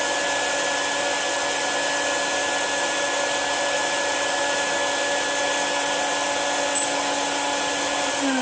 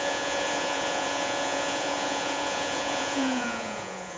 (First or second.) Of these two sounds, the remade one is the second